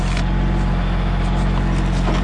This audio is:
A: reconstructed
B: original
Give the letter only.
B